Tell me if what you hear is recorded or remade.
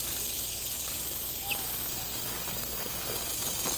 remade